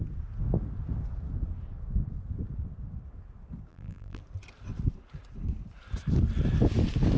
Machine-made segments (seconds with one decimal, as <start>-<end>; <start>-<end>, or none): 3.7-4.2